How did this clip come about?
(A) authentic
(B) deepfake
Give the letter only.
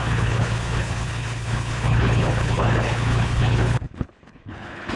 B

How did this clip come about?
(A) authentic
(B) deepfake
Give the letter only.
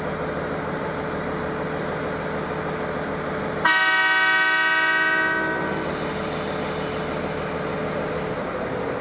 A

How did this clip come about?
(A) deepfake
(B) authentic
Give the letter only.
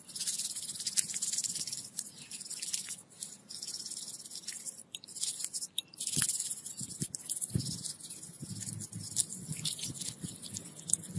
B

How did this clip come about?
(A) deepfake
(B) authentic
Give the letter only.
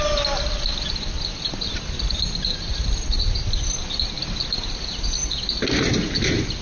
B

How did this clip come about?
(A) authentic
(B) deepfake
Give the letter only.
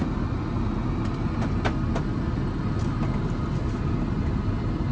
A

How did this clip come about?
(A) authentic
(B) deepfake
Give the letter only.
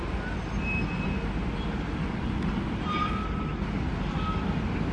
A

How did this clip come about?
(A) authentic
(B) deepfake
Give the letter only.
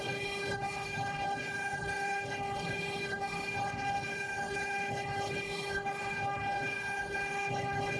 B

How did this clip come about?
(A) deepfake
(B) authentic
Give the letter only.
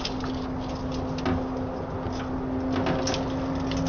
B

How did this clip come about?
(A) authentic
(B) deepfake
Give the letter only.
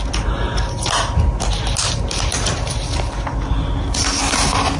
A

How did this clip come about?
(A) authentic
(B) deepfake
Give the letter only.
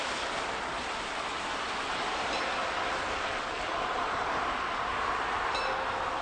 A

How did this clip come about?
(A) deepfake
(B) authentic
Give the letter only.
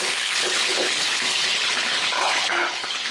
A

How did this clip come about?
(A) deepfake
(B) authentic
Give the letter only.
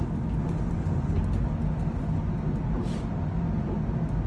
B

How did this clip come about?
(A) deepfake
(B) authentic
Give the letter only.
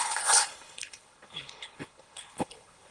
A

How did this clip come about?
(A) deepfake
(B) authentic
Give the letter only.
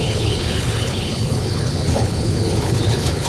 A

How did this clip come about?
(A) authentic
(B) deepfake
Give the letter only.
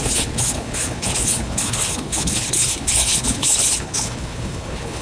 B